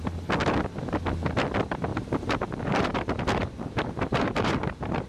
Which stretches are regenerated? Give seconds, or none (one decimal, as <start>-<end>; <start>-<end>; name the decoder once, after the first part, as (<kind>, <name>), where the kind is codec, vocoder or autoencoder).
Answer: 1.9-5.1 (vocoder, BigVGAN v2)

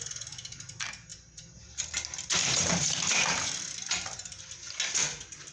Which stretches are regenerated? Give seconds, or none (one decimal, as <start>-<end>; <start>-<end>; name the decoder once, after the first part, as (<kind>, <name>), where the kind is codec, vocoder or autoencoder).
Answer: 1.1-4.4 (vocoder, BigVGAN v2)

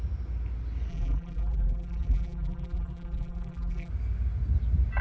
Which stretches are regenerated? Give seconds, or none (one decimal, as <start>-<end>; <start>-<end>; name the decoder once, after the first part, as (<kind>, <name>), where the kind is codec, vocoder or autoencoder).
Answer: 0.9-3.9 (vocoder, BigVGAN v2)

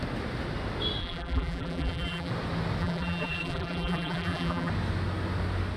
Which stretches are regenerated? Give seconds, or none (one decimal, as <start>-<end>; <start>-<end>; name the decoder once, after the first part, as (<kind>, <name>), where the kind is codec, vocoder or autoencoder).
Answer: 1.0-2.3 (vocoder, BigVGAN v2); 2.8-4.7

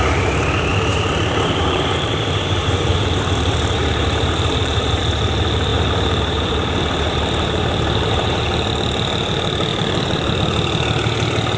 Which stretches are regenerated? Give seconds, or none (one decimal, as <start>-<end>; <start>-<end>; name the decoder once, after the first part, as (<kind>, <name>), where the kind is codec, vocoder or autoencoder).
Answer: 0.7-5.0 (vocoder, BigVGAN v2); 5.7-8.7; 9.7-10.3

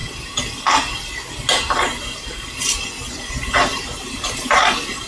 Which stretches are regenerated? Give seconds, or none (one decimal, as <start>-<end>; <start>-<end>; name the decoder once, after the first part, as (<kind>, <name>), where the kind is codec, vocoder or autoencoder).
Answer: 3.7-4.6 (vocoder, BigVGAN v2)